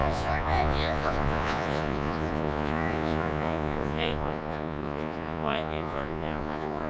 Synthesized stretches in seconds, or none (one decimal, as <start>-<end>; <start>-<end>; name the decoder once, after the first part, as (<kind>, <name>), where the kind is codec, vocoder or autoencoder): 0.0-6.9 (vocoder, Vocos)